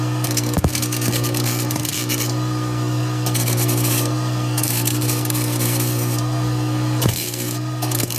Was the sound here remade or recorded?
remade